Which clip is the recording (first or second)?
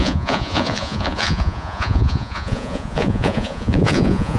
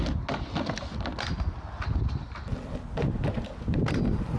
second